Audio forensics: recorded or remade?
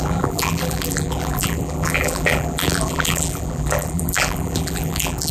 remade